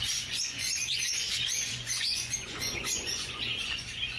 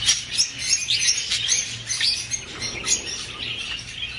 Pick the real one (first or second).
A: second